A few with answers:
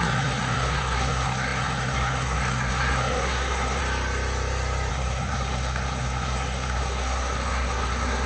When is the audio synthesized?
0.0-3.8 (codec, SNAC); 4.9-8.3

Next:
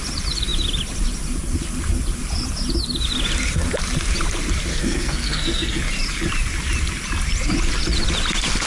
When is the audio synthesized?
4.7-5.8 (codec, SNAC)

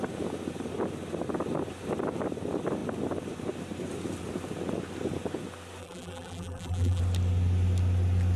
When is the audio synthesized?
5.8-7.0 (vocoder, BigVGAN v2)